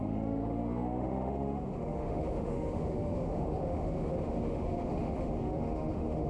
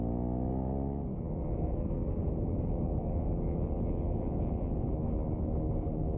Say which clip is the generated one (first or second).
first